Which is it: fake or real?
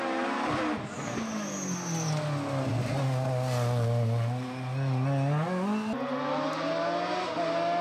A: real